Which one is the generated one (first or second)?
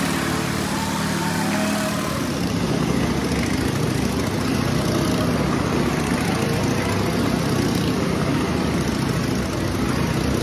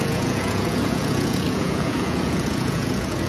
second